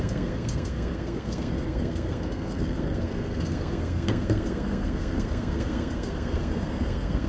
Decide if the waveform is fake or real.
fake